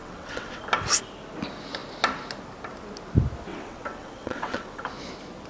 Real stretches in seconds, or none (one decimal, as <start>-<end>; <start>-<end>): 0.6-3.5; 4.8-5.5